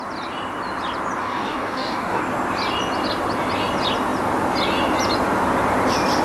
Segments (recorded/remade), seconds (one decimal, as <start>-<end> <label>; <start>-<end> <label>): 0.0-1.2 recorded; 1.2-2.2 remade; 2.2-6.2 recorded